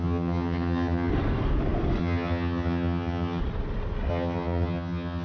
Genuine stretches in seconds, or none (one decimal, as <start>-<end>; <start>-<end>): 1.1-2.0; 3.4-4.1